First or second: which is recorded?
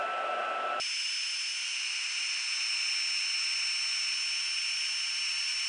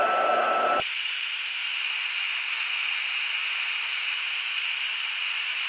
first